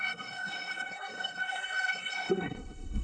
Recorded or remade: remade